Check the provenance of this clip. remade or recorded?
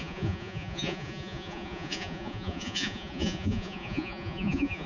remade